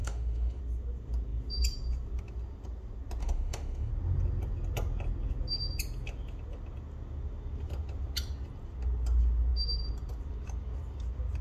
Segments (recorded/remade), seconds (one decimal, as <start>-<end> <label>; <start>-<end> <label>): 0.0-0.6 remade; 0.6-3.2 recorded; 3.2-3.9 remade; 3.9-11.4 recorded